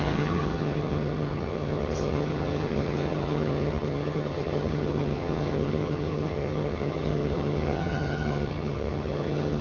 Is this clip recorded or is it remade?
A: remade